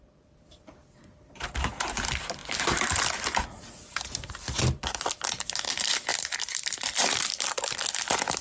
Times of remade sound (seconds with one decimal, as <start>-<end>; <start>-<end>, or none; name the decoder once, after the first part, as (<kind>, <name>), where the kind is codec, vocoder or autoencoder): 2.4-5.0 (vocoder, BigVGAN v2); 6.1-8.4